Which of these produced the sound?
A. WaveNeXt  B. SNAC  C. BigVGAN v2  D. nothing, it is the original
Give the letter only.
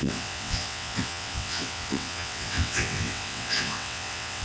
A